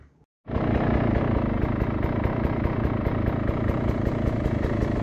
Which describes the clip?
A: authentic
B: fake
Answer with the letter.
A